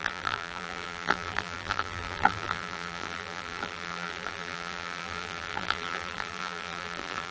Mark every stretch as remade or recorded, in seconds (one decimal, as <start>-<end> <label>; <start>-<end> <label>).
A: 0.0-7.3 remade